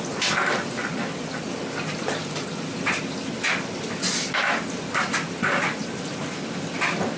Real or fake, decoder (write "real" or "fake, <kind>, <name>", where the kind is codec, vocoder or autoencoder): real